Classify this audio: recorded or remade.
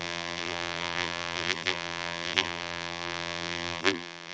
remade